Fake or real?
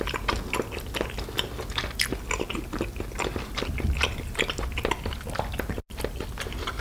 real